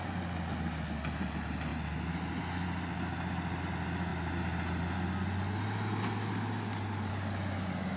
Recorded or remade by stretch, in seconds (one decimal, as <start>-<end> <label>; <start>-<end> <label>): 0.0-8.0 recorded